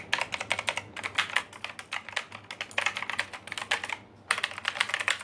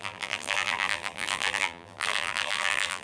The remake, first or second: second